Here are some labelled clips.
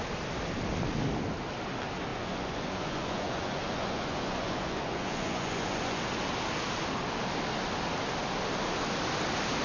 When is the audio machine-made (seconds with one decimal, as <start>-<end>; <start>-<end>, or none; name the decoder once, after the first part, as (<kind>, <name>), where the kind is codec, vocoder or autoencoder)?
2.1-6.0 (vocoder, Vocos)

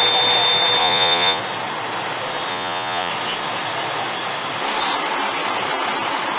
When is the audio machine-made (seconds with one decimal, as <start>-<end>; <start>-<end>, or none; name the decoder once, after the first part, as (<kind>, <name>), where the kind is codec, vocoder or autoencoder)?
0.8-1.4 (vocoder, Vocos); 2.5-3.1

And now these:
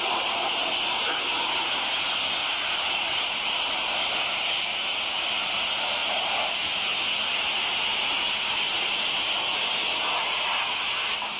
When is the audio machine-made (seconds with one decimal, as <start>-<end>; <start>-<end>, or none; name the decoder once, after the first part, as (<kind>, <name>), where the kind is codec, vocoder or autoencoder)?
none

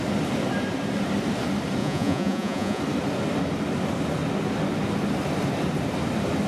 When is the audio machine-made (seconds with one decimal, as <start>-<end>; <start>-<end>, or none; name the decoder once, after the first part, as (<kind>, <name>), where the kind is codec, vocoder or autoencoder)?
1.8-2.8 (vocoder, Vocos)